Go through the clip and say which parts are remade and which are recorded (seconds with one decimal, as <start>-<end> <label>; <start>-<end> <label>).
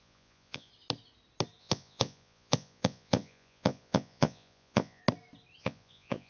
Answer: 0.0-0.7 remade; 0.7-1.6 recorded; 1.6-5.0 remade; 5.0-5.6 recorded; 5.6-6.3 remade